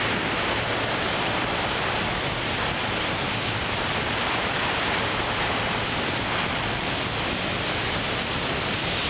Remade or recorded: remade